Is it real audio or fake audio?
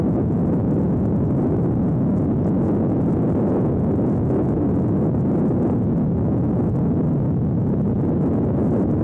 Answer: real